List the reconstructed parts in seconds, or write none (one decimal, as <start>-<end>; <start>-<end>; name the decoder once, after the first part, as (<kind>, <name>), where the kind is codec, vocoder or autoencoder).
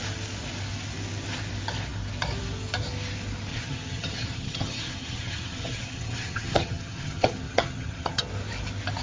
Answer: 3.5-8.2 (vocoder, HiFi-GAN)